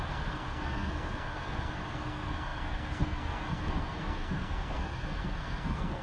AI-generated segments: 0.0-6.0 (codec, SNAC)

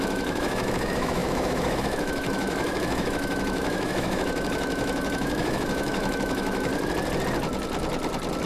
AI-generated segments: 0.0-6.7 (autoencoder, DAC-VAE)

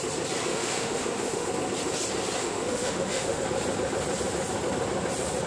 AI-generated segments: 0.5-1.5 (autoencoder, DAC-VAE); 2.4-3.4

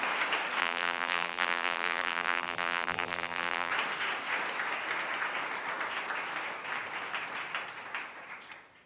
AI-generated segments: 0.6-3.7 (vocoder, BigVGAN v2)